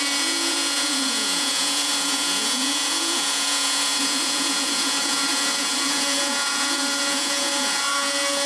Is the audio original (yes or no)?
no